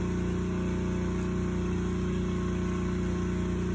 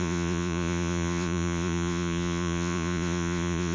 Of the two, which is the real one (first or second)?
first